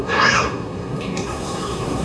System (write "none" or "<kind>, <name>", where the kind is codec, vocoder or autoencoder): codec, SNAC